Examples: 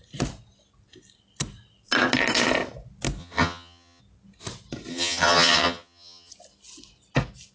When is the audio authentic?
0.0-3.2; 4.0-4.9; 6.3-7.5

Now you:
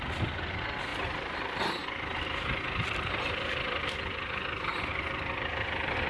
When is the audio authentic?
1.8-2.6

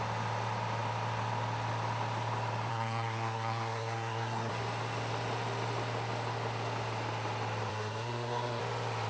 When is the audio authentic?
0.0-2.7; 4.5-7.7; 8.6-9.1